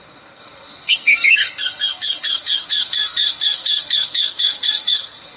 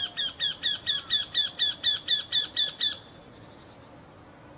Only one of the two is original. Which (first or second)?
second